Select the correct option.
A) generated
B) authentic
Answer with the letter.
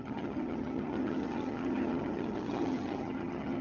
A